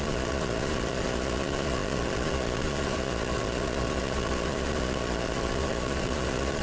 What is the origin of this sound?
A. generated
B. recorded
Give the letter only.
A